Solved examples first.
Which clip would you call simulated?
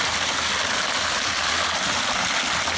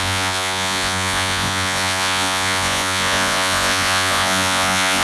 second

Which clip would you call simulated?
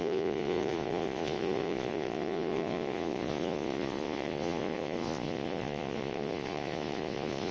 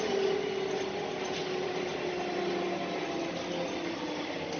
first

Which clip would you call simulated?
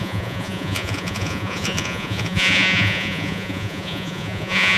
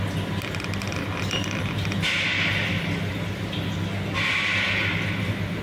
first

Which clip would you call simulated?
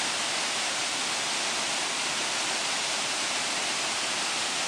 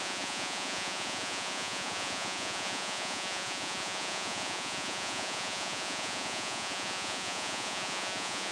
second